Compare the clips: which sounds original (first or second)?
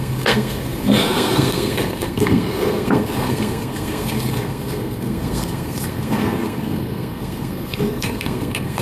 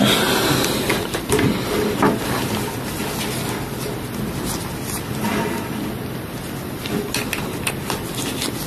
second